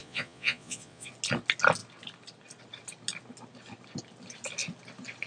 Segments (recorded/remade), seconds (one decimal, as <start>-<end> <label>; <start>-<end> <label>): 0.0-1.1 remade; 1.1-5.3 recorded